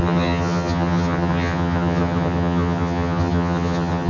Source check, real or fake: fake